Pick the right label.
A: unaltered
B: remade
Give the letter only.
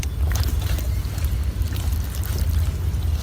A